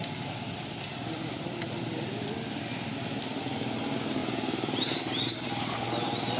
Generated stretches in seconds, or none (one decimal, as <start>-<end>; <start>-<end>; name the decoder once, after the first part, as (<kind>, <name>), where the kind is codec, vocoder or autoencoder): none